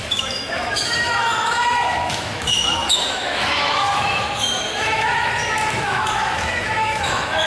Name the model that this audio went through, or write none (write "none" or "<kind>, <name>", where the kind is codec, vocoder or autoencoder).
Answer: autoencoder, DAC-VAE